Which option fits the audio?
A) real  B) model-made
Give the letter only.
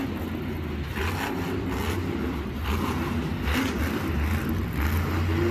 A